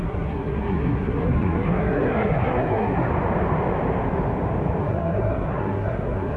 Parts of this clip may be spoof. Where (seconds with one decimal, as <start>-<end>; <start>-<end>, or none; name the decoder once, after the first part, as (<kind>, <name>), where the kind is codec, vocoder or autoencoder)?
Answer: 0.0-3.1 (codec, SNAC); 4.8-6.4